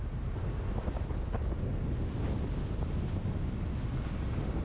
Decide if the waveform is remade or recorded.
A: recorded